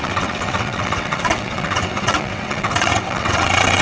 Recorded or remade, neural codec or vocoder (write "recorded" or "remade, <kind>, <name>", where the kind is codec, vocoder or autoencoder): remade, vocoder, WaveNeXt